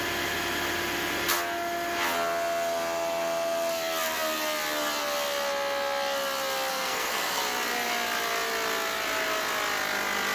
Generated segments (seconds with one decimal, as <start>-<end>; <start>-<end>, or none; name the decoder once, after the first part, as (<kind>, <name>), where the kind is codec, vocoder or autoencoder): 6.7-7.4 (codec, SNAC)